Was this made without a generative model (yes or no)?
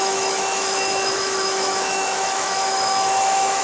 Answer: no